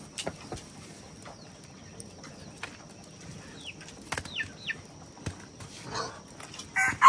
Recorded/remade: recorded